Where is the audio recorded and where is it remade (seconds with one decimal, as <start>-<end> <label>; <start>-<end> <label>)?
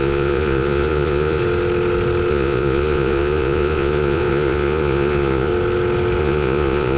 0.0-1.4 remade; 1.4-2.3 recorded; 2.3-5.5 remade; 5.5-6.2 recorded; 6.2-7.0 remade